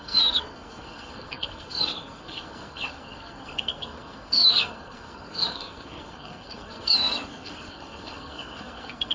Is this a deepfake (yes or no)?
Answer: yes